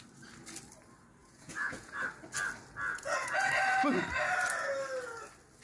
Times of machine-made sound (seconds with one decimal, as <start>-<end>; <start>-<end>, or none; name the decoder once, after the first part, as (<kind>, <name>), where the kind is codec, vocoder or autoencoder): 1.2-2.0 (vocoder, Vocos); 2.9-3.5